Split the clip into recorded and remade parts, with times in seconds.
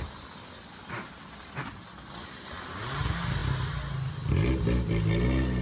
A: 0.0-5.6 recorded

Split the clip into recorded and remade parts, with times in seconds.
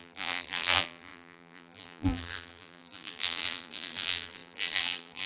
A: 0.0-5.3 remade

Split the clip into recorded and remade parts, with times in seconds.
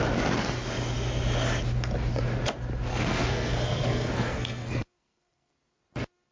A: 0.0-2.9 recorded; 2.9-5.8 remade; 5.8-6.3 recorded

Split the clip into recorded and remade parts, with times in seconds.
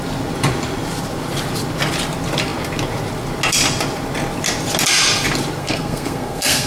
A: 0.0-5.6 recorded; 5.6-6.7 remade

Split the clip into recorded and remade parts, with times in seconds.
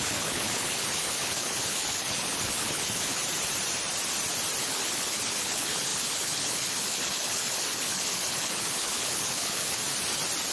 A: 0.0-3.2 remade; 3.2-4.6 recorded; 4.6-9.8 remade; 9.8-10.5 recorded